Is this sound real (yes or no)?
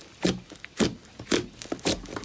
yes